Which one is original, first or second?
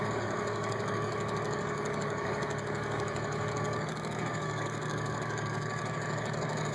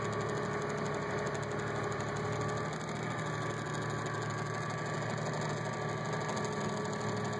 second